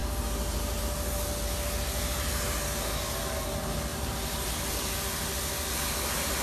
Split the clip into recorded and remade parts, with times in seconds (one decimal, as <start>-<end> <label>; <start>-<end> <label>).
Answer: 0.0-3.9 recorded; 3.9-4.5 remade; 4.5-6.4 recorded